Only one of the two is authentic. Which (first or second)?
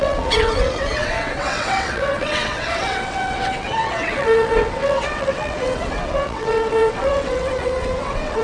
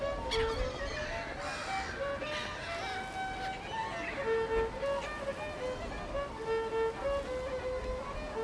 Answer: second